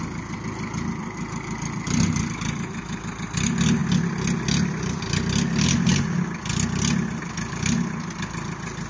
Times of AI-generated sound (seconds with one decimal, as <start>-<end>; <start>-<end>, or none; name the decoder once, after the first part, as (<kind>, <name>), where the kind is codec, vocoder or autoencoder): none